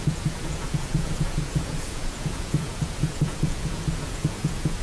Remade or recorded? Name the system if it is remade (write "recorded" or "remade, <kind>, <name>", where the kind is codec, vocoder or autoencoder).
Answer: remade, vocoder, Vocos